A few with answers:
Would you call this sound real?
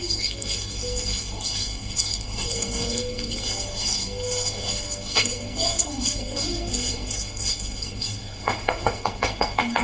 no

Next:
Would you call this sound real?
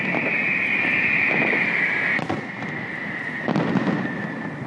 yes